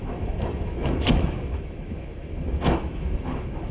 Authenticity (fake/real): fake